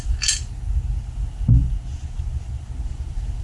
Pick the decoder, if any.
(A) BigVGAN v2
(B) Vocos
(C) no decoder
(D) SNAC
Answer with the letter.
C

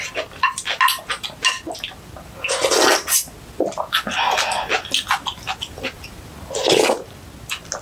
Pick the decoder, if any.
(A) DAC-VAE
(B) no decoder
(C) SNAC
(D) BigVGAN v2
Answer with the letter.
B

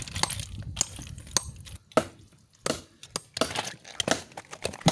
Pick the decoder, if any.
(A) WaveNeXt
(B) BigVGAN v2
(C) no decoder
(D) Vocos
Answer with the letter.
C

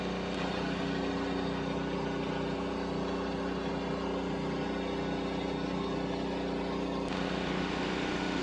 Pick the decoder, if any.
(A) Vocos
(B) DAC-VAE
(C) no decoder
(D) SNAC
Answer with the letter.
C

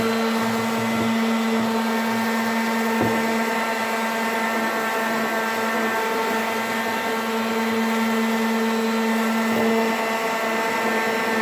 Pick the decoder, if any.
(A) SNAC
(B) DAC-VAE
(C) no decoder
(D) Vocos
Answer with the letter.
C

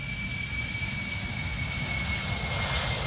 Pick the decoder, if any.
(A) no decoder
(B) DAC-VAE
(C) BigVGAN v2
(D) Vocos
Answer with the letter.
A